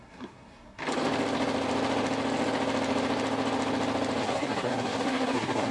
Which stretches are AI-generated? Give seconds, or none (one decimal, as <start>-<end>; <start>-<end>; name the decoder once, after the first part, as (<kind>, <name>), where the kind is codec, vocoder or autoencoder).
0.0-0.8 (codec, SNAC); 4.2-5.7